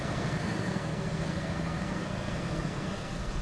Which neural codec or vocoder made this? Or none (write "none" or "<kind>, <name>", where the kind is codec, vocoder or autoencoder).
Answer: codec, SNAC